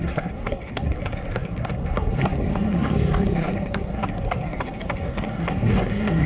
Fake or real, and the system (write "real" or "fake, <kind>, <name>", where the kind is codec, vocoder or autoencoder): fake, codec, SNAC